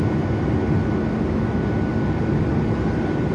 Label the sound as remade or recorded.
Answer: recorded